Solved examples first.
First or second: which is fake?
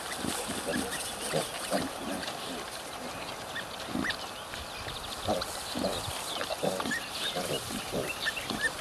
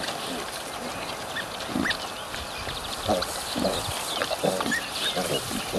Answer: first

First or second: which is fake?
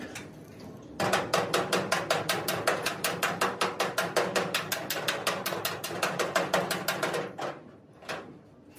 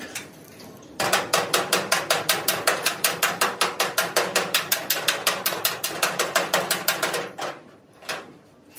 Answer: second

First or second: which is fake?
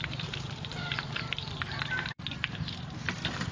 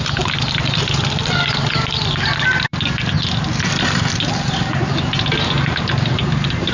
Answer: first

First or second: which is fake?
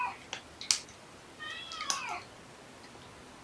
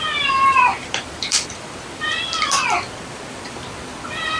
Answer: second